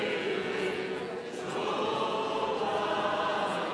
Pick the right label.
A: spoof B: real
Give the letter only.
A